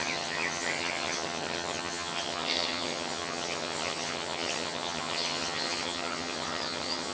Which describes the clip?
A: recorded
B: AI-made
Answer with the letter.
B